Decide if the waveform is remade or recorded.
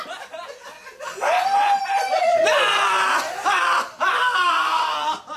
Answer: remade